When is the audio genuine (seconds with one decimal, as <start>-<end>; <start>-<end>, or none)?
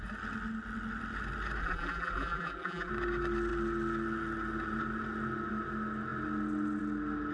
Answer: 0.0-1.6; 2.9-7.3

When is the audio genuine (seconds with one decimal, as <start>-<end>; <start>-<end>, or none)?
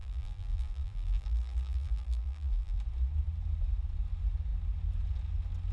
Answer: 2.8-5.7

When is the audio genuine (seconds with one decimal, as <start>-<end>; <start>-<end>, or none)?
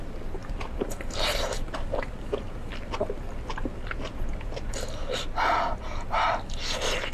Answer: 0.0-0.4; 4.7-7.1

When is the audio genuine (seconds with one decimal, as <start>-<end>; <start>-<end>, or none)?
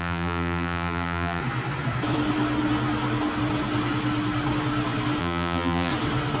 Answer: 1.4-5.2; 5.9-6.4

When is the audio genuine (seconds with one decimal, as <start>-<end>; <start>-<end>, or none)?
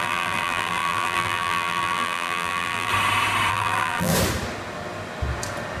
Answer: 2.9-3.5; 4.1-5.8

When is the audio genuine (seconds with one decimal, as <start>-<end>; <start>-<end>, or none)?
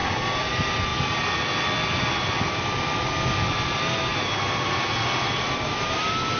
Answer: 0.0-6.4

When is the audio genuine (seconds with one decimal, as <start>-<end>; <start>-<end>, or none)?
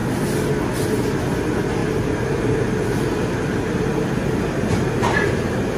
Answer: 0.0-1.8; 5.3-5.8